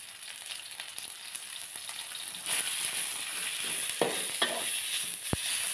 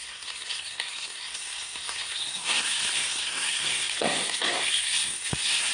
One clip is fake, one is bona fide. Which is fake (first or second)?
second